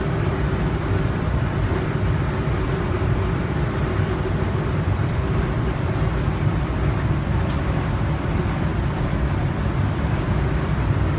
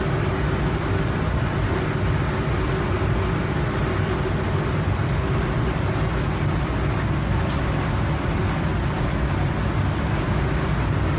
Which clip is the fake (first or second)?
first